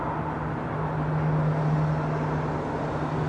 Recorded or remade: recorded